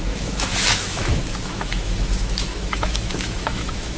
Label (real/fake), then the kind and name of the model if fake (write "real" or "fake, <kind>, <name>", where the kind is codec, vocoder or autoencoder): fake, autoencoder, DAC-VAE